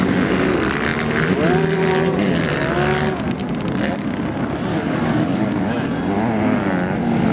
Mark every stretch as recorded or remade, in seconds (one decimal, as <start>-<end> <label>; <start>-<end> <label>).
0.0-4.7 recorded; 4.7-5.6 remade; 5.6-7.3 recorded